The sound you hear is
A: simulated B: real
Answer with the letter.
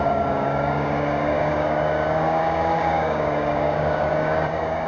A